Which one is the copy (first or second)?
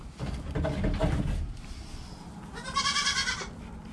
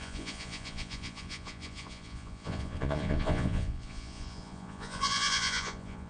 second